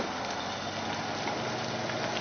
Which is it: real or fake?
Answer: real